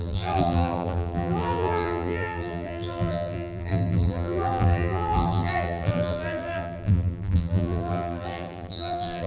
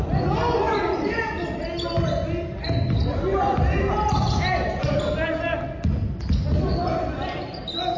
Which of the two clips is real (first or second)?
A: second